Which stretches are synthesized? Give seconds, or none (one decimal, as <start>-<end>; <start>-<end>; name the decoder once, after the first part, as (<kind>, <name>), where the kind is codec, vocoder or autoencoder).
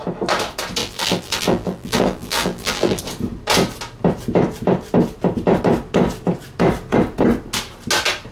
0.8-3.0 (vocoder, BigVGAN v2)